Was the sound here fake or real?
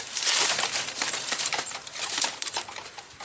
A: fake